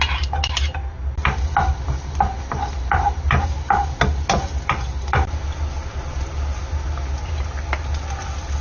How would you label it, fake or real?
real